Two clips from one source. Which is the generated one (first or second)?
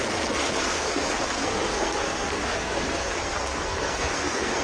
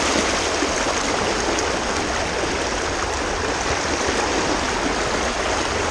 first